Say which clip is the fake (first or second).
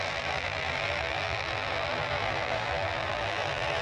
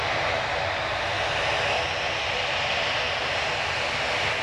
first